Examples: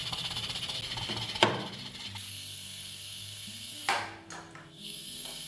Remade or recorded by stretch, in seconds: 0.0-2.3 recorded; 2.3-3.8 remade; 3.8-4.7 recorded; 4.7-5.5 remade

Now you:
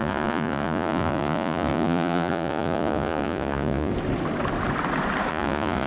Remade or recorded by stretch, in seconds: 0.0-3.9 remade; 3.9-5.3 recorded; 5.3-5.9 remade

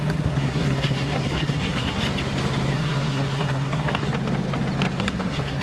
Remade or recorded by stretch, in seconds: 0.0-2.0 remade; 2.0-2.7 recorded; 2.7-4.1 remade; 4.1-5.0 recorded; 5.0-5.6 remade

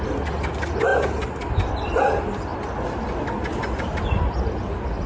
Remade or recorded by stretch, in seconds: 0.0-5.1 recorded